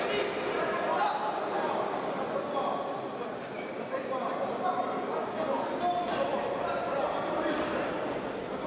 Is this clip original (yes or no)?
yes